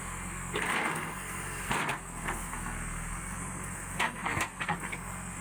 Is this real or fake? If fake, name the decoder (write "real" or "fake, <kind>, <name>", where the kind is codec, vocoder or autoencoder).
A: fake, codec, SNAC